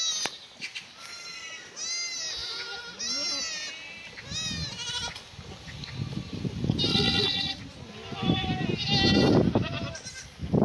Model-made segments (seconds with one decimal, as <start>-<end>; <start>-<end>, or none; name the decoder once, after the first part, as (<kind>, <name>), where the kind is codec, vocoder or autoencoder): 6.9-7.6 (vocoder, Vocos)